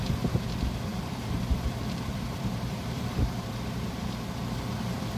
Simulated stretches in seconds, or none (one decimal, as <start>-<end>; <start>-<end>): 0.9-3.9